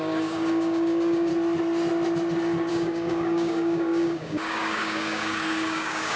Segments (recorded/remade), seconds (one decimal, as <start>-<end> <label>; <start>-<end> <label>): 0.0-1.3 remade; 1.3-2.7 recorded; 2.7-6.2 remade